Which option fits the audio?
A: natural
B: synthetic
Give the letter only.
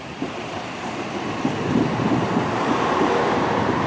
B